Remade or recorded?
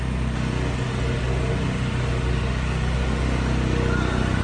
recorded